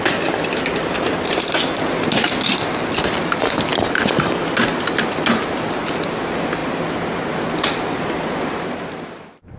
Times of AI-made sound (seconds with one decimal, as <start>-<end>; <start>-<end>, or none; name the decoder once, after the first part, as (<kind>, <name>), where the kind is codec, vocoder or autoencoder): 3.7-4.4 (vocoder, BigVGAN v2)